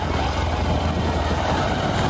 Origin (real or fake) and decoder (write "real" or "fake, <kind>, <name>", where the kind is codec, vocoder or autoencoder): real